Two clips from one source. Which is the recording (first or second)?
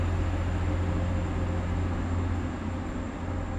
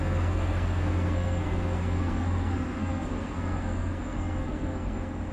first